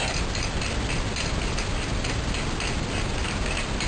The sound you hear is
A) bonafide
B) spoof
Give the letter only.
A